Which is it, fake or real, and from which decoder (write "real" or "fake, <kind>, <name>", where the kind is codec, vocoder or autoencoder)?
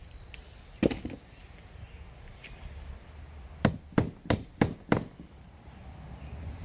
real